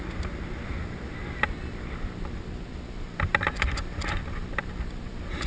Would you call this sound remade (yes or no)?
yes